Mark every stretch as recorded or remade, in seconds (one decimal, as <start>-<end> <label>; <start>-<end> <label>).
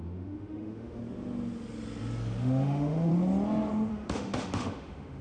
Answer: 0.0-1.0 remade; 1.0-2.4 recorded; 2.4-3.1 remade; 3.1-3.9 recorded; 3.9-5.2 remade